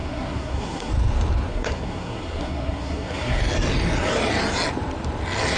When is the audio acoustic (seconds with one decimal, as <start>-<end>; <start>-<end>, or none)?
0.9-1.5; 3.4-5.6